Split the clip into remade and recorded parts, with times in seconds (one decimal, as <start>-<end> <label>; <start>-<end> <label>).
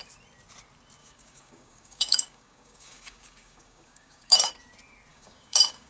0.0-1.0 recorded; 1.0-4.5 remade; 4.5-5.1 recorded; 5.1-5.9 remade